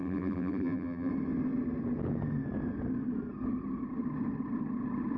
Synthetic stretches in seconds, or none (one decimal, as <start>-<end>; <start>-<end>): 0.0-1.1